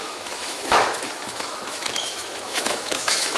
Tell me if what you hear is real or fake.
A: fake